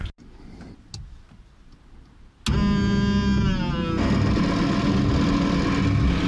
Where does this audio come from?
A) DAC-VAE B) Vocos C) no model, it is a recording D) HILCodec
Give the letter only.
C